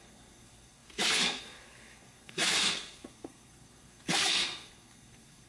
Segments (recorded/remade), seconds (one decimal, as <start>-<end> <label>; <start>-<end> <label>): 0.0-5.5 remade